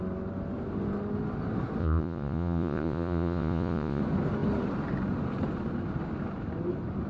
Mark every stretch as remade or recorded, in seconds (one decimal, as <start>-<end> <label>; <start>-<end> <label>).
0.0-1.8 recorded; 1.8-4.0 remade; 4.0-7.1 recorded